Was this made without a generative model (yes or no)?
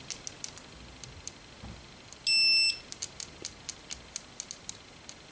yes